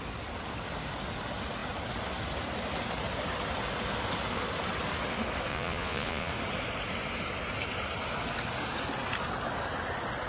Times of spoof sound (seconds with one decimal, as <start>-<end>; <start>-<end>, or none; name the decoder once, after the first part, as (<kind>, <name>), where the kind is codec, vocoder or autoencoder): 5.5-6.3 (vocoder, Vocos)